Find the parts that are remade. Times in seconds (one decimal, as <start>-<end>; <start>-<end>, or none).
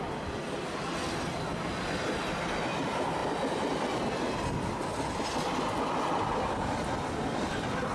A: none